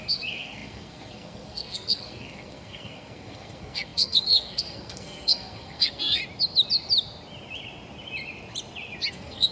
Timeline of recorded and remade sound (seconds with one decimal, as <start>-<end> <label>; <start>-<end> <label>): 0.0-6.2 remade; 6.2-9.1 recorded; 9.1-9.5 remade